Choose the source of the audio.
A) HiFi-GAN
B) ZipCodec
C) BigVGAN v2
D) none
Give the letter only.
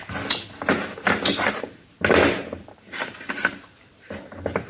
D